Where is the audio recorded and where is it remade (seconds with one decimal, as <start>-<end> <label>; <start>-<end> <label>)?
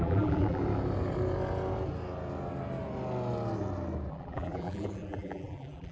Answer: 0.0-0.6 remade; 0.6-4.1 recorded; 4.1-5.9 remade